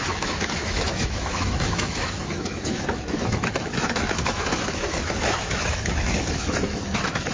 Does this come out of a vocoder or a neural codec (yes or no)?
yes